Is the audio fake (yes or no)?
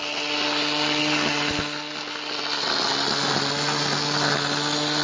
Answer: no